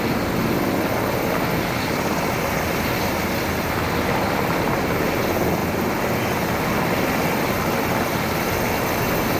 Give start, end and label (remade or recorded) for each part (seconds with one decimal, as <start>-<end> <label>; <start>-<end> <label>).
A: 0.0-9.4 recorded